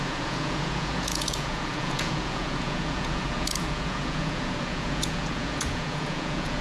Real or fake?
fake